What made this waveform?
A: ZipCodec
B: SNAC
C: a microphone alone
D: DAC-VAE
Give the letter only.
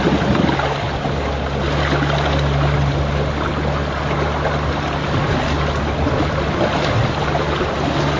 C